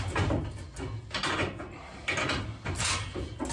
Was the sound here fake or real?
real